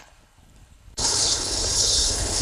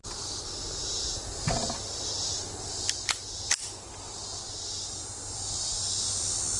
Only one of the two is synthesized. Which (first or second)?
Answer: first